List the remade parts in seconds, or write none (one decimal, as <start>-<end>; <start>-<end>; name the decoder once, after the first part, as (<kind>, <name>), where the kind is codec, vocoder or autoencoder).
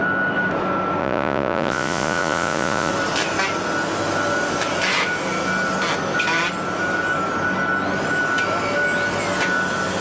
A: 1.0-2.9 (vocoder, Vocos)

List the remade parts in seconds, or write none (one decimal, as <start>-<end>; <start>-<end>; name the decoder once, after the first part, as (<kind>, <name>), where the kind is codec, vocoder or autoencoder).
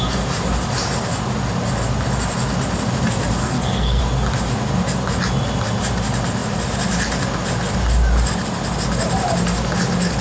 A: 3.4-4.0 (codec, SNAC)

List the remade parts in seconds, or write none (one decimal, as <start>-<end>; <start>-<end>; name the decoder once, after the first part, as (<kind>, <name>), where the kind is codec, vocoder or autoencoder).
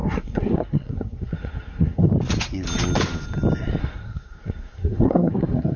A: 0.0-2.1 (codec, SNAC); 3.8-5.8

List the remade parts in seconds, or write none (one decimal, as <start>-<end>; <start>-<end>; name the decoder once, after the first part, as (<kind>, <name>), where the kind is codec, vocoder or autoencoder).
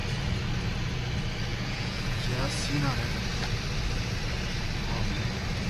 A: 1.5-2.7 (vocoder, Vocos)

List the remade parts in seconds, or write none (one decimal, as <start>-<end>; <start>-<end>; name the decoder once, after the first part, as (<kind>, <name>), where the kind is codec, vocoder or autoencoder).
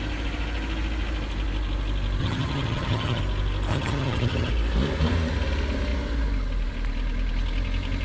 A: 2.2-3.2 (vocoder, HiFi-GAN); 3.7-4.5